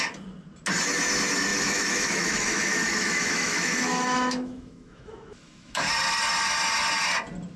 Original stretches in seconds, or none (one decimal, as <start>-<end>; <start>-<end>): 0.0-1.5; 5.9-7.6

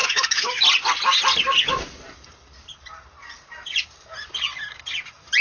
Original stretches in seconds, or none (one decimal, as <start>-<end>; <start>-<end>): 0.6-5.4

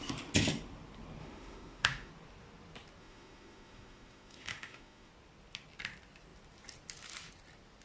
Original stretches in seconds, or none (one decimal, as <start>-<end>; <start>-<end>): 0.0-1.2; 2.1-3.0; 5.1-7.8

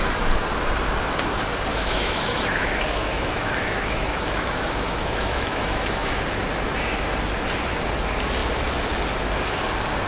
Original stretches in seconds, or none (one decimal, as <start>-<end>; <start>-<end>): 0.0-1.7; 6.2-10.1